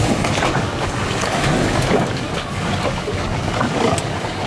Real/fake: fake